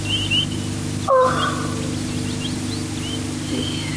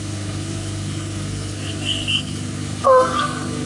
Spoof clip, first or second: second